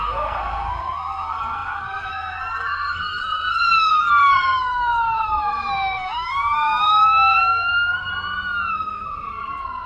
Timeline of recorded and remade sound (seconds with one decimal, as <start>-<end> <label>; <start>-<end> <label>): 0.0-8.1 remade; 8.1-8.7 recorded; 8.7-9.9 remade